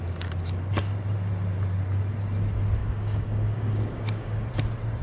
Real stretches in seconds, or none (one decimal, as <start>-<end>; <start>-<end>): 0.0-2.8; 4.5-5.0